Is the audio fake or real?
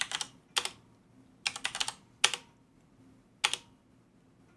real